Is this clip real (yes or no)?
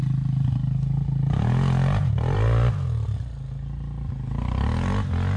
yes